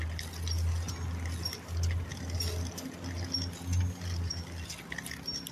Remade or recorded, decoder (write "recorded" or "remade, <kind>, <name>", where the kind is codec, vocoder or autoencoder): recorded